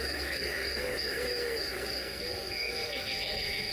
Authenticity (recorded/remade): remade